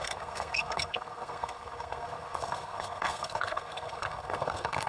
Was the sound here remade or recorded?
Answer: remade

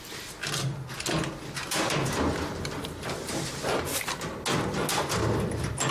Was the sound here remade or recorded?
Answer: recorded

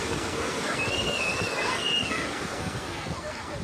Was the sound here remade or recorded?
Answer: remade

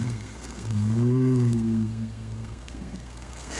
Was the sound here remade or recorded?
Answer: remade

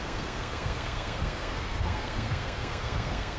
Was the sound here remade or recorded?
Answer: remade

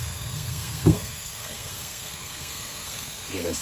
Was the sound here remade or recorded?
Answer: remade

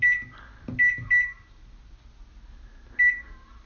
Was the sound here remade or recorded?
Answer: recorded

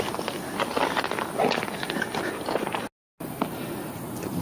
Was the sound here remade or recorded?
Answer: recorded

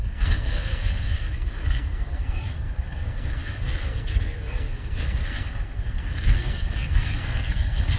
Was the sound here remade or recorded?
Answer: remade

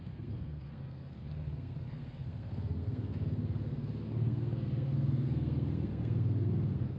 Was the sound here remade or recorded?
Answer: remade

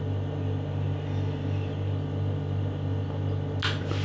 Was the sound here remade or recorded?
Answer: recorded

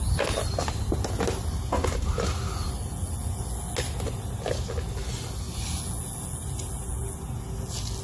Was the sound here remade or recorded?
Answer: recorded